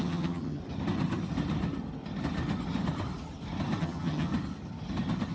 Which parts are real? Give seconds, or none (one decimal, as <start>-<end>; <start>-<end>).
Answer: 0.6-3.8; 4.3-5.3